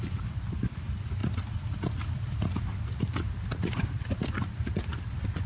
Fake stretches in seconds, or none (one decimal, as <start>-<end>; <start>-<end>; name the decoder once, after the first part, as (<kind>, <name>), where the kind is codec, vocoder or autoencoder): none